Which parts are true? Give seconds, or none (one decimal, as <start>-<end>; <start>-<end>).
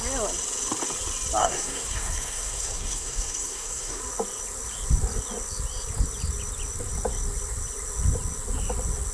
0.0-1.4; 4.0-9.1